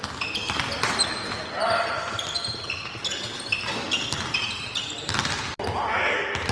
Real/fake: real